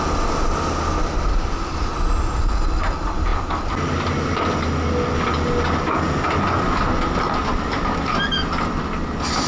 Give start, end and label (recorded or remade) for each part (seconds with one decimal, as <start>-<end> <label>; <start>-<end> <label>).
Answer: 0.0-9.5 recorded